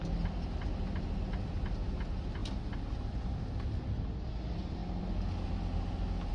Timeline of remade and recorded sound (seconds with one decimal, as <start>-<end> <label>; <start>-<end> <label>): 0.0-6.3 recorded